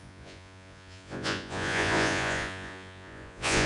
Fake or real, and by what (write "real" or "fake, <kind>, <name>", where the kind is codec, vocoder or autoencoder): fake, vocoder, Vocos